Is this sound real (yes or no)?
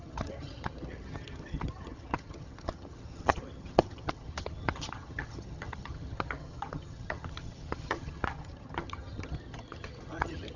no